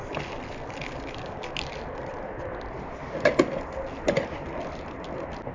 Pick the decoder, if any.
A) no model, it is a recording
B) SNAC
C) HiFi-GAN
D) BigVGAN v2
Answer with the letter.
A